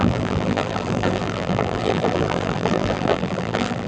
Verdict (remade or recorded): remade